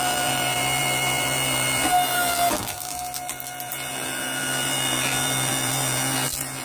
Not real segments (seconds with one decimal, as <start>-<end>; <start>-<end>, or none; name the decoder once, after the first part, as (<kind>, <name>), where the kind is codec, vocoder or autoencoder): 0.0-6.6 (vocoder, BigVGAN v2)